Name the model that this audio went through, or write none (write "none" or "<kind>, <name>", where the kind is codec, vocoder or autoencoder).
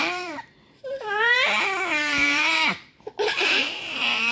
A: vocoder, BigVGAN v2